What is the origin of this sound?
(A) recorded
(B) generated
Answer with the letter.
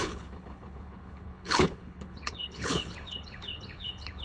B